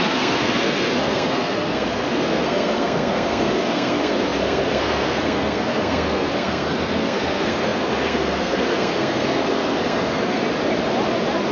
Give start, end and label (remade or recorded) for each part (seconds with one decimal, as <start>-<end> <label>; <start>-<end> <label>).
0.0-10.4 remade; 10.4-11.5 recorded